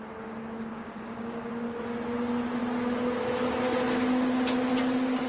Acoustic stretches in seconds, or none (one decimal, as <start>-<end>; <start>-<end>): 0.0-0.7; 1.5-5.3